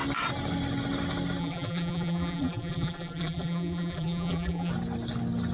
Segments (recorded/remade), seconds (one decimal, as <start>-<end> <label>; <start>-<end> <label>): 0.0-1.4 recorded; 1.4-4.7 remade; 4.7-5.5 recorded